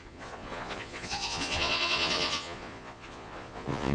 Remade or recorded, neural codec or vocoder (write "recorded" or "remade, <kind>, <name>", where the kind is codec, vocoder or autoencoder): remade, vocoder, Vocos